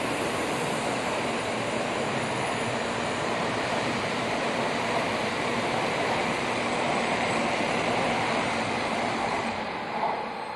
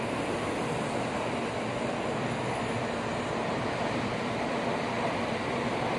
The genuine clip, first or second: second